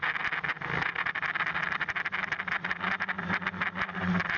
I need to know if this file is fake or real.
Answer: real